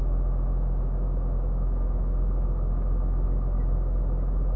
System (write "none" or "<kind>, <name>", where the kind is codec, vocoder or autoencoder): autoencoder, DAC-VAE